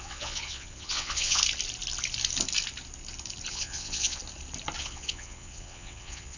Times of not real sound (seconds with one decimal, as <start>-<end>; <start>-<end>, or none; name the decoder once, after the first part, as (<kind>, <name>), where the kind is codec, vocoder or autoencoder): 0.0-1.4 (vocoder, WaveNeXt); 3.5-4.2; 4.8-6.4